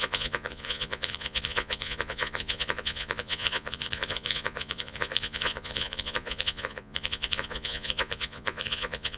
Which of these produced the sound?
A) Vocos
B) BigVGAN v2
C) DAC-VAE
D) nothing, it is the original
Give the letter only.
A